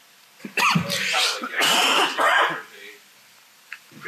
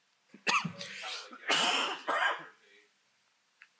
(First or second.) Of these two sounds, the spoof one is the first